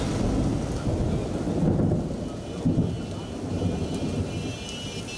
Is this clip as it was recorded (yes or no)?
yes